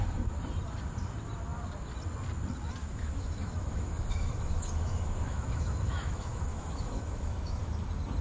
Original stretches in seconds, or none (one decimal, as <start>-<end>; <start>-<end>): 0.0-2.8; 7.7-8.2